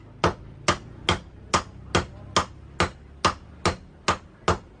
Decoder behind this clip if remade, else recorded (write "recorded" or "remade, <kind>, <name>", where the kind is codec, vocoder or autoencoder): recorded